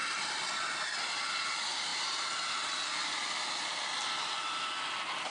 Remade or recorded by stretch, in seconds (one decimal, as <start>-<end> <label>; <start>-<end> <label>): 0.0-5.3 recorded